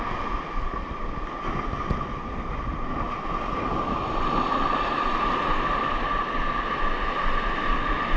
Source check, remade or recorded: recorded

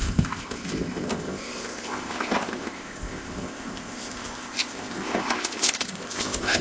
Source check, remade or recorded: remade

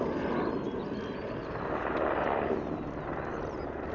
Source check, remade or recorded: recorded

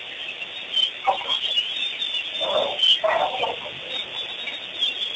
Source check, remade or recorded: recorded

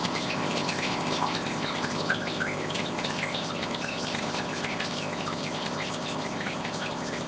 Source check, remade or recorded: remade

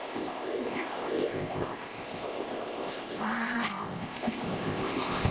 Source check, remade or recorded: remade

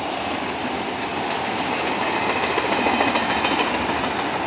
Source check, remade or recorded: recorded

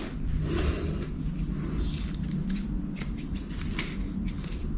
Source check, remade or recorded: recorded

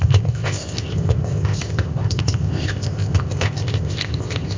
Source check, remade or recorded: remade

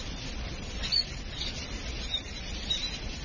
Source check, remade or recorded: recorded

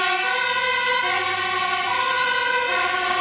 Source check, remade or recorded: recorded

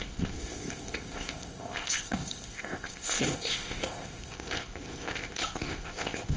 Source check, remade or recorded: remade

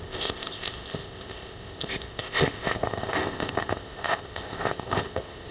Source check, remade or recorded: remade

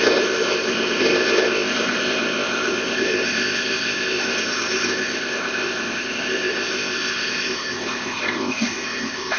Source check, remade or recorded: remade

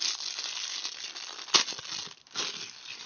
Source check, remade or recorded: recorded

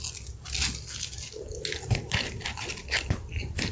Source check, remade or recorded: recorded